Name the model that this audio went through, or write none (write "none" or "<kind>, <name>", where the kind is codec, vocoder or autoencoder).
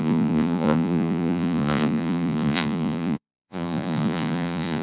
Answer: vocoder, Vocos